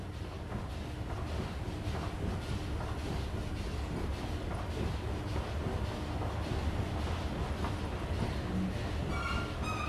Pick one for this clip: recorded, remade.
recorded